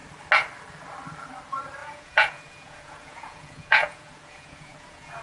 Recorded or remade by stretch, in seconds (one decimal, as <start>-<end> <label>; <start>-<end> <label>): 0.0-1.8 recorded; 1.8-5.2 remade